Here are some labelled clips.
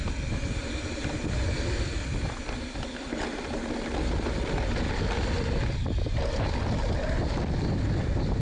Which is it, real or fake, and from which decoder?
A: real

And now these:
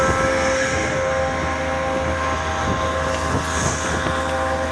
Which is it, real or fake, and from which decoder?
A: real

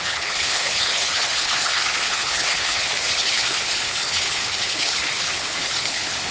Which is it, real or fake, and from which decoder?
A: fake, codec, HILCodec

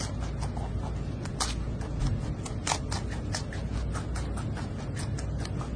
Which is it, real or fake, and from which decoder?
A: real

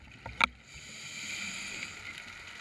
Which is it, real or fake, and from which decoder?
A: real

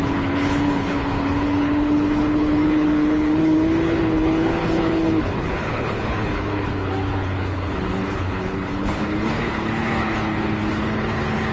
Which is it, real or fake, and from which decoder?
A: fake, codec, HILCodec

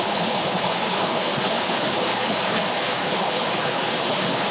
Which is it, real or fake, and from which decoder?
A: fake, codec, HILCodec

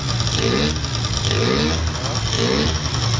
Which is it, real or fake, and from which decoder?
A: real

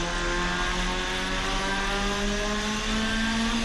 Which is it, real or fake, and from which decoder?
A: real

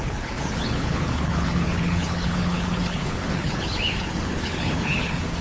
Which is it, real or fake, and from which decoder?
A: fake, codec, HILCodec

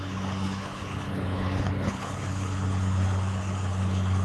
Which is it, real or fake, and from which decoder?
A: fake, codec, HILCodec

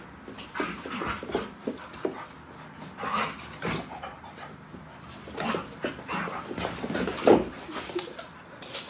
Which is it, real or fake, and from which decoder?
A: real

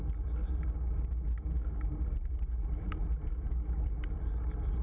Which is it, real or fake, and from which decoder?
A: real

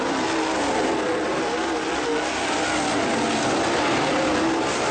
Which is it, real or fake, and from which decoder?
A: real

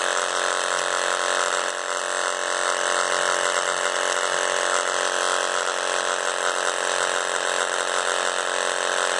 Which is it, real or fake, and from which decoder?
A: real